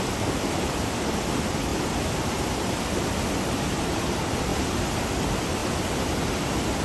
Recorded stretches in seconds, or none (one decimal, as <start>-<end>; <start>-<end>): 4.5-5.0; 5.6-6.8